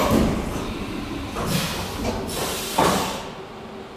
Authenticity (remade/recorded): recorded